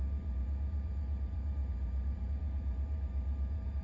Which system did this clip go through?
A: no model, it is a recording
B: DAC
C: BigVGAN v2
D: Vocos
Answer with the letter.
C